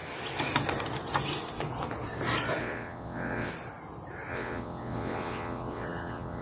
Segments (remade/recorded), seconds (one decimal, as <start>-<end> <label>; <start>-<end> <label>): 0.0-2.6 recorded; 2.6-3.5 remade; 3.5-4.3 recorded; 4.3-6.4 remade